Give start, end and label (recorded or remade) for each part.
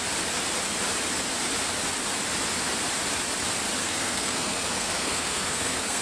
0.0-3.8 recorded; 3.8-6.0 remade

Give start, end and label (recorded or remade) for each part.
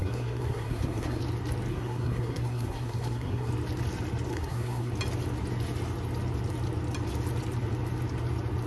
0.0-1.2 remade; 1.2-1.7 recorded; 1.7-3.5 remade; 3.5-4.3 recorded; 4.3-4.9 remade; 4.9-8.7 recorded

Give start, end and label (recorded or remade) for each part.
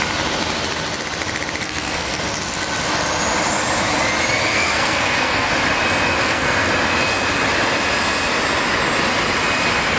0.0-1.6 recorded; 1.6-2.2 remade; 2.2-4.4 recorded; 4.4-5.5 remade; 5.5-6.2 recorded; 6.2-6.7 remade; 6.7-10.0 recorded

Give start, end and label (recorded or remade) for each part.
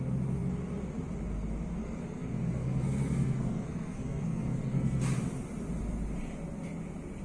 0.0-1.8 recorded; 1.8-5.0 remade; 5.0-7.2 recorded